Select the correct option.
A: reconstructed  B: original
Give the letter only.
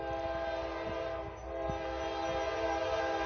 B